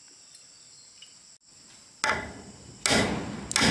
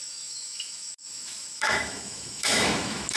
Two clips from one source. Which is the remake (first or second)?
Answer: second